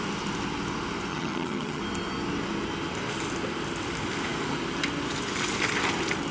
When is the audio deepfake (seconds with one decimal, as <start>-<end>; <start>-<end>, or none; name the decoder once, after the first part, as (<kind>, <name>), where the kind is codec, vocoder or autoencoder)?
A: 1.1-1.8 (vocoder, HiFi-GAN)